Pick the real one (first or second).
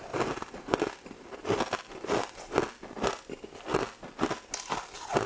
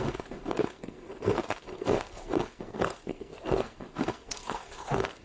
first